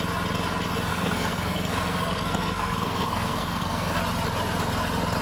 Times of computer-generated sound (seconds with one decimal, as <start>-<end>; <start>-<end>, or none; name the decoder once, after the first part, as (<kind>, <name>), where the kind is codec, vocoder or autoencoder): 0.9-4.0 (codec, SNAC)